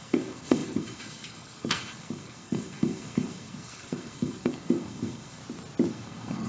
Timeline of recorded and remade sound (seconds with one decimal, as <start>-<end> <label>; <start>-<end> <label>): 0.0-5.4 remade; 5.4-5.9 recorded; 5.9-6.5 remade